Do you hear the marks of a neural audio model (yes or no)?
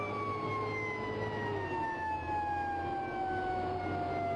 no